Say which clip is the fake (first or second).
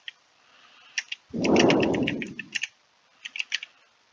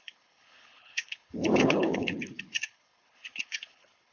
second